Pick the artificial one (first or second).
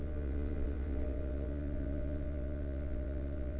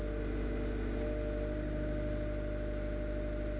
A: first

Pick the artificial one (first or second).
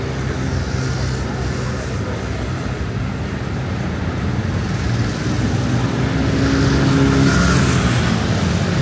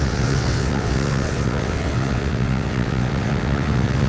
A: second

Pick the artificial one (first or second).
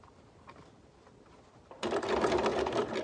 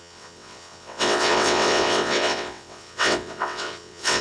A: second